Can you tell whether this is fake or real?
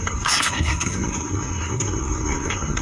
fake